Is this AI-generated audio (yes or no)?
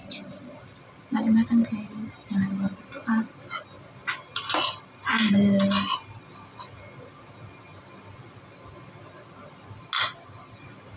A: no